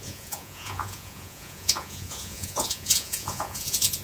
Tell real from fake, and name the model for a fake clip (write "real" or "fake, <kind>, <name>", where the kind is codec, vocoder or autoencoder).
fake, vocoder, Vocos